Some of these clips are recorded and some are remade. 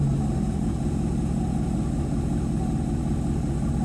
remade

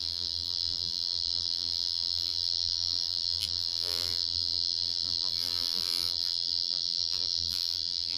remade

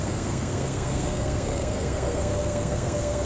remade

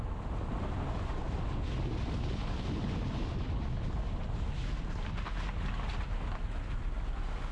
recorded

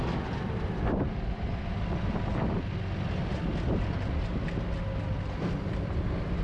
recorded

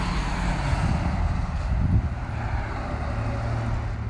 recorded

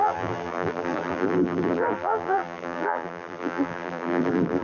remade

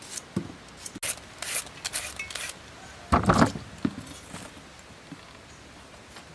recorded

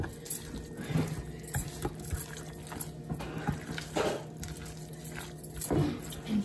recorded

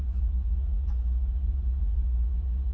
remade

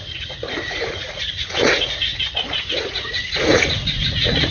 remade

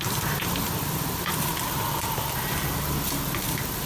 recorded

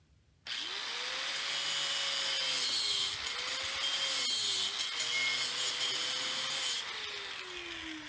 recorded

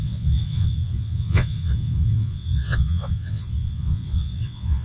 remade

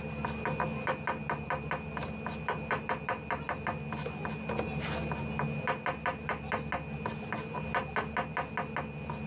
recorded